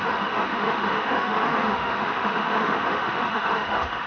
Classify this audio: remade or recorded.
remade